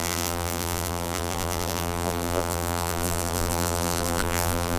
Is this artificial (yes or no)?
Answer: yes